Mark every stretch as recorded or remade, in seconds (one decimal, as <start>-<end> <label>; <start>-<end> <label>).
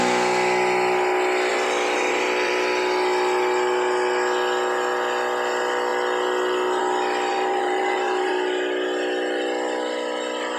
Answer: 0.0-1.5 recorded; 1.5-2.5 remade; 2.5-7.3 recorded; 7.3-8.3 remade; 8.3-10.6 recorded